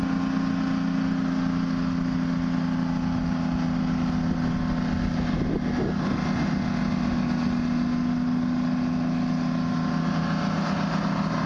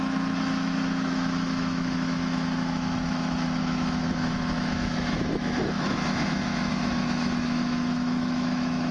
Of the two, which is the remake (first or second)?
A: second